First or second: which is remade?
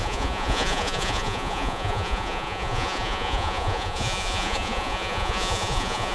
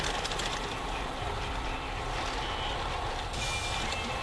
first